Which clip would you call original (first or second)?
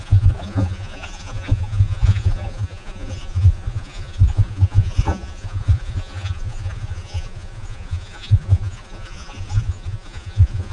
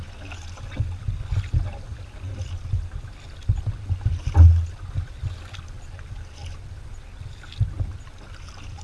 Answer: second